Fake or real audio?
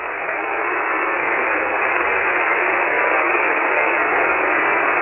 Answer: fake